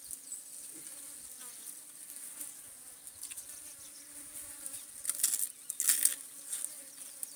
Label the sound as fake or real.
real